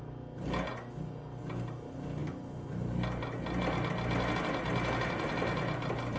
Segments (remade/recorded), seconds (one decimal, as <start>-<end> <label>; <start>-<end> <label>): 0.0-6.2 recorded